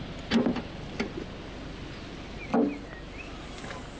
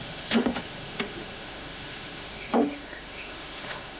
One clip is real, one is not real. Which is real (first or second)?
first